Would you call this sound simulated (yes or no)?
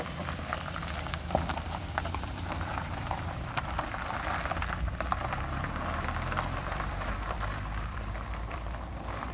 yes